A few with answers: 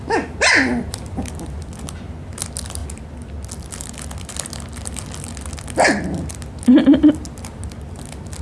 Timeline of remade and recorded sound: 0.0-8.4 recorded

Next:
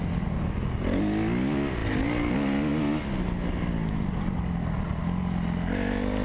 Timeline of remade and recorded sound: 0.0-6.2 recorded

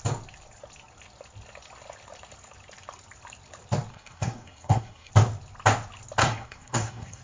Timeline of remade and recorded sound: 0.0-3.9 recorded; 3.9-5.1 remade; 5.1-6.2 recorded; 6.2-7.2 remade